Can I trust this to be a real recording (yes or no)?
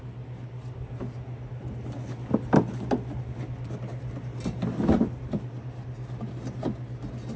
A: yes